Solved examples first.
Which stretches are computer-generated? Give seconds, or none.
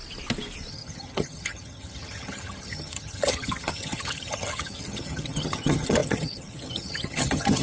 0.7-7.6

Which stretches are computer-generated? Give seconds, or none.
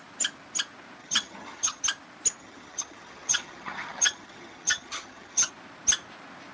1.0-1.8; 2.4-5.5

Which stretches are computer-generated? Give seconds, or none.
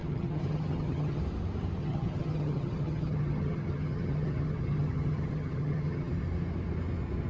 0.0-1.2; 1.8-6.1